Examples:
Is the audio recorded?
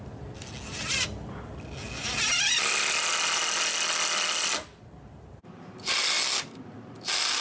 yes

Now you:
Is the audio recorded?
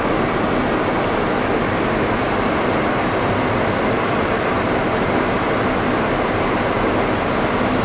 yes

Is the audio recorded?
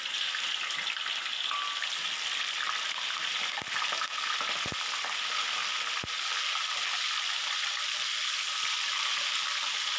yes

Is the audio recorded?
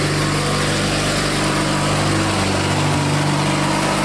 yes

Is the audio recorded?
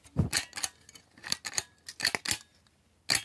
yes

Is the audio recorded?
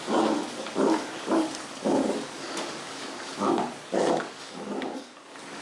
no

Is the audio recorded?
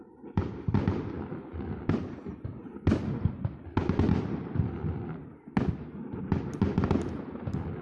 yes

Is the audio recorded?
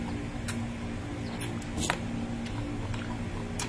yes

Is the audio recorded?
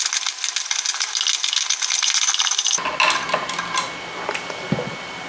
yes